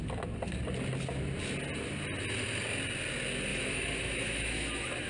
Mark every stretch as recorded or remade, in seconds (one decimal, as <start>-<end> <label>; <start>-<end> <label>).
0.0-3.5 recorded; 3.5-5.1 remade